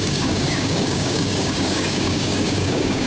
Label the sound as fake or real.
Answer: fake